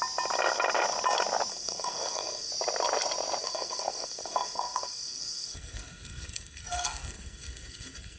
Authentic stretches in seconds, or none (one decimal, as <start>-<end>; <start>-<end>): 0.0-1.5; 2.5-3.4